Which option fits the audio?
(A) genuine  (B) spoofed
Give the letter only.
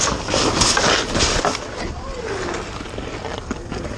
A